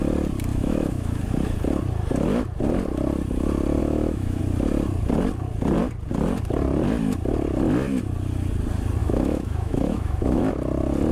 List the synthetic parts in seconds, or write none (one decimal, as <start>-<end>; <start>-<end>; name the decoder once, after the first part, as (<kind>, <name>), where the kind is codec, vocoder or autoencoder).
0.5-1.2 (autoencoder, DAC-VAE); 3.8-4.4; 9.0-10.5